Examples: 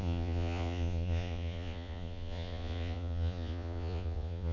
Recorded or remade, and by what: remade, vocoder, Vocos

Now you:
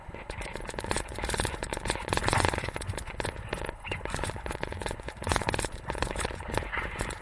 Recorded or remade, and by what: remade, vocoder, Vocos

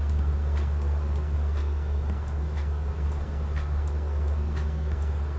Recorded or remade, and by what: remade, codec, SNAC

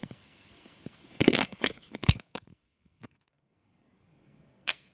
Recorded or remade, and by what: remade, codec, SNAC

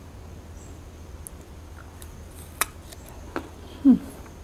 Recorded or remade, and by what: recorded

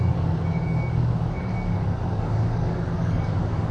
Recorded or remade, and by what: remade, codec, DAC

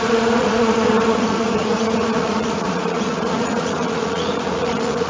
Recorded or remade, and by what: remade, vocoder, Vocos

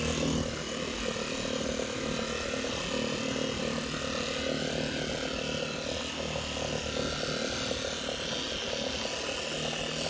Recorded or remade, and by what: recorded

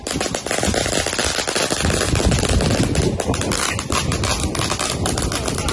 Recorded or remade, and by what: recorded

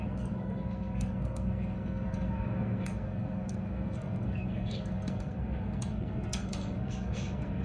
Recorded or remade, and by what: remade, codec, SNAC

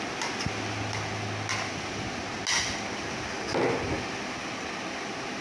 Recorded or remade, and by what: recorded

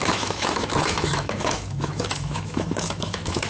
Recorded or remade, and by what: remade, autoencoder, DAC-VAE